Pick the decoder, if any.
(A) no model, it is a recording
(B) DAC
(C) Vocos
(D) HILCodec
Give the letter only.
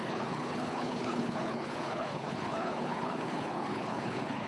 D